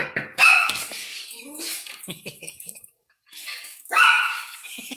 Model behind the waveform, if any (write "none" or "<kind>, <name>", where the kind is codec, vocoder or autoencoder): codec, DAC